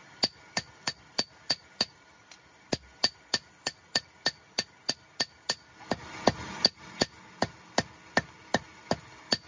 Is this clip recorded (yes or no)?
yes